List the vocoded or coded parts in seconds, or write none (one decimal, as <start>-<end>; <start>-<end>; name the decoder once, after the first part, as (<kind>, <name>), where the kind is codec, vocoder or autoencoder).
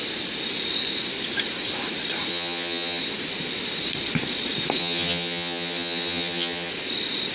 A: 2.3-3.0 (vocoder, HiFi-GAN); 4.8-6.7